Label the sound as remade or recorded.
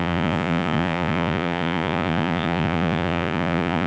remade